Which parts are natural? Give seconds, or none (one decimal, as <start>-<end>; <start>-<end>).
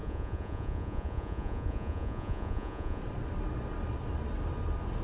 3.0-5.0